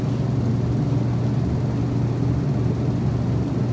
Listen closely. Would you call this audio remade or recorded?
recorded